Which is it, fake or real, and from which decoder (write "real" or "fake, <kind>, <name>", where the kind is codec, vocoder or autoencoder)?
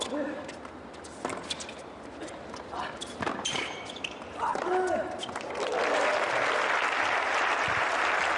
fake, vocoder, BigVGAN v2